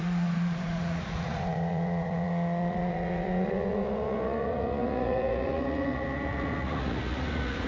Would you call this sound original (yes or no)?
no